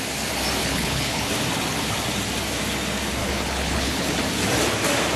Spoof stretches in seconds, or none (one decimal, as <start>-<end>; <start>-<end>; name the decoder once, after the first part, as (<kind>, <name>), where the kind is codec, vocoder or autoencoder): 0.6-1.3 (codec, HILCodec); 3.2-4.2